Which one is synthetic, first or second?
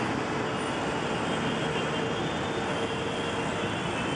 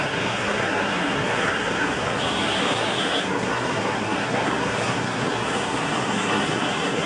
second